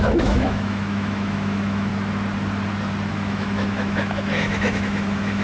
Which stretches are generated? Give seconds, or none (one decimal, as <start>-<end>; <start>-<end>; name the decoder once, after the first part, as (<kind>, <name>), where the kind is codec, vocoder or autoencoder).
0.0-1.9 (autoencoder, DAC-VAE); 3.1-5.4